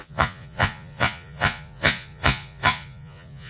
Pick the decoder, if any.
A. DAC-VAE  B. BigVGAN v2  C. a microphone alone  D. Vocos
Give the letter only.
D